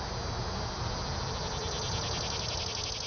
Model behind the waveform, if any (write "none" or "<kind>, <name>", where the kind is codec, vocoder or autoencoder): none